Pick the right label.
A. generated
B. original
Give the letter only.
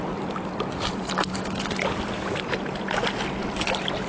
B